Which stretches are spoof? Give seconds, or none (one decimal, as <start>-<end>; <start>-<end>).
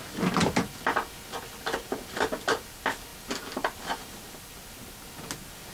3.1-4.7